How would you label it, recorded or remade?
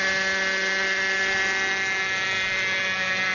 recorded